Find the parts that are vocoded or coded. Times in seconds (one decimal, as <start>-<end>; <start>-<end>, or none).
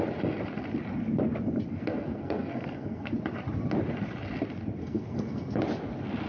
1.7-3.1; 4.8-5.6